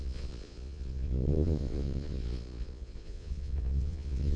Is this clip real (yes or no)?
no